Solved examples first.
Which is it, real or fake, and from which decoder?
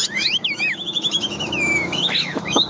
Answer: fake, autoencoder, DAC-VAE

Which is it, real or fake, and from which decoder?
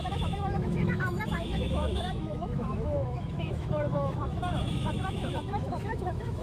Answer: fake, autoencoder, DAC-VAE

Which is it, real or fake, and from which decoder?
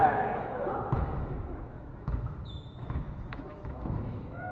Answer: fake, autoencoder, DAC-VAE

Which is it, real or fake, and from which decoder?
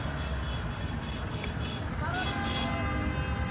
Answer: real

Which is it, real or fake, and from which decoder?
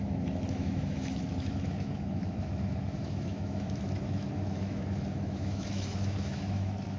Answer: fake, autoencoder, DAC-VAE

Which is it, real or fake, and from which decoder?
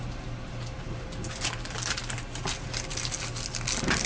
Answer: real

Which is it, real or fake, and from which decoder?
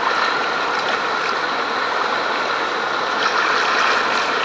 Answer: real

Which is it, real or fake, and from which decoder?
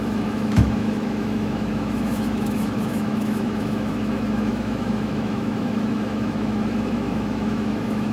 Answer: fake, autoencoder, DAC-VAE